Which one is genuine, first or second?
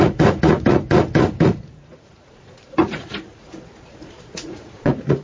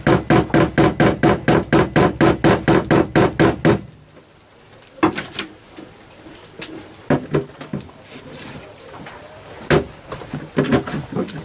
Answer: second